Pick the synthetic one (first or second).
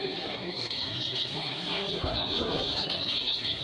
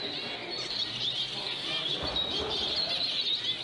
first